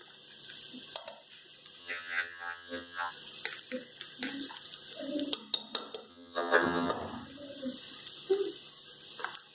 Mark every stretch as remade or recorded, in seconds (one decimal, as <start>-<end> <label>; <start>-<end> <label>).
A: 0.0-1.8 recorded; 1.8-3.1 remade; 3.1-6.1 recorded; 6.1-6.9 remade; 6.9-9.5 recorded